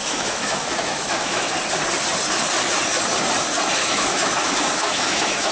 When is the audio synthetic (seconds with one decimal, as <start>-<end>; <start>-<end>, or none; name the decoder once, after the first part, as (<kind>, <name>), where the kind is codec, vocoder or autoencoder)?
0.0-1.5 (autoencoder, DAC-VAE); 3.8-5.5